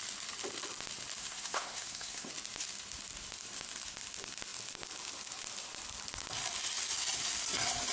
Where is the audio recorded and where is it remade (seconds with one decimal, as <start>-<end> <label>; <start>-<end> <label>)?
0.0-1.2 recorded; 1.2-2.3 remade; 2.3-7.9 recorded

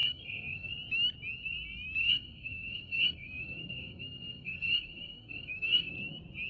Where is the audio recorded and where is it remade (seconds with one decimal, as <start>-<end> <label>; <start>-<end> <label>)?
0.0-0.7 remade; 0.7-2.0 recorded; 2.0-5.9 remade; 5.9-6.5 recorded

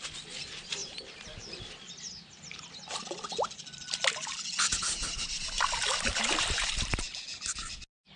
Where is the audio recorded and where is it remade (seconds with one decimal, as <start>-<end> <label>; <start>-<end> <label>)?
0.0-8.2 recorded